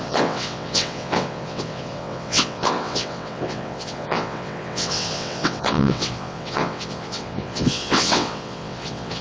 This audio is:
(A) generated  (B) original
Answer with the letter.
A